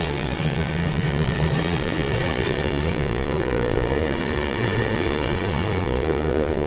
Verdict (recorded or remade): remade